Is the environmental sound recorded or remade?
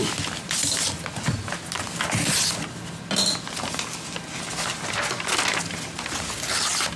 recorded